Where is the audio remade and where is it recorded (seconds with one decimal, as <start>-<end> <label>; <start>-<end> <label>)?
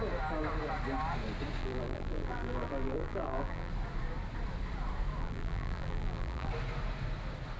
0.0-1.6 recorded; 1.6-3.7 remade; 3.7-5.2 recorded; 5.2-6.5 remade; 6.5-7.6 recorded